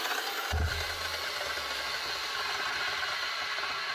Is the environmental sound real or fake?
real